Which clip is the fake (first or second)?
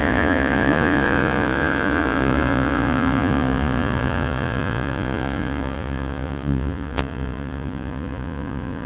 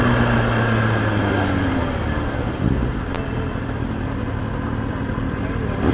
first